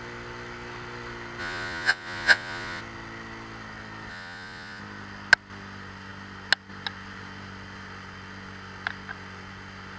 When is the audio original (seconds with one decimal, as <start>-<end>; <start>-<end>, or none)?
0.0-1.4; 2.8-4.1; 4.8-10.0